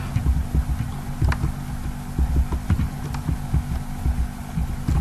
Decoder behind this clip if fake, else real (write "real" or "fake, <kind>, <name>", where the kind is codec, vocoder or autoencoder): real